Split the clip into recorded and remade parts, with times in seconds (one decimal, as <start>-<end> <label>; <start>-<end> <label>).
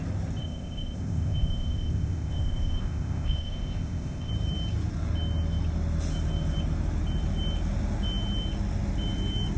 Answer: 0.0-0.4 recorded; 0.4-4.3 remade; 4.3-9.6 recorded